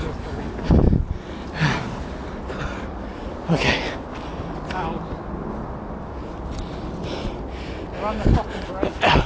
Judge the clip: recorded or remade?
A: recorded